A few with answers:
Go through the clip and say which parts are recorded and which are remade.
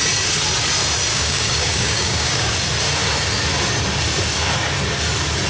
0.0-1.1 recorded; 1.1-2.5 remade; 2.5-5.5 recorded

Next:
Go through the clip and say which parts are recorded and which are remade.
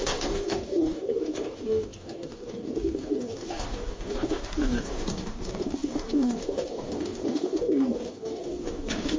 0.0-9.2 remade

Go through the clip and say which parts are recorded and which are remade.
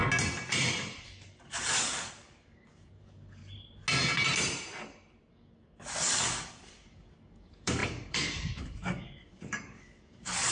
0.0-1.0 recorded; 1.0-3.4 remade; 3.4-5.3 recorded; 5.3-10.5 remade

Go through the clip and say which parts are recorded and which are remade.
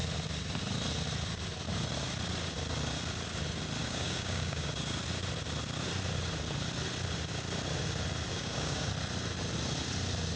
0.0-3.8 recorded; 3.8-4.7 remade; 4.7-8.3 recorded; 8.3-8.9 remade; 8.9-10.4 recorded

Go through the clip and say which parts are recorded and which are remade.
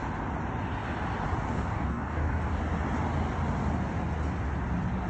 0.0-1.5 recorded; 1.5-2.6 remade; 2.6-5.1 recorded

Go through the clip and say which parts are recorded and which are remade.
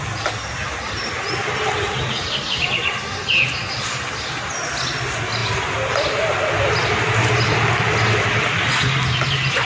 0.0-9.6 recorded